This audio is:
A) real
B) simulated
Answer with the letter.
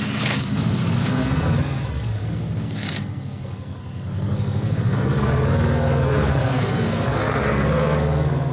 B